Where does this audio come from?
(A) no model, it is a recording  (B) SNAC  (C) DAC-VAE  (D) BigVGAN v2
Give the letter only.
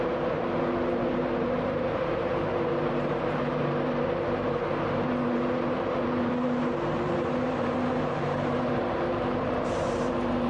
D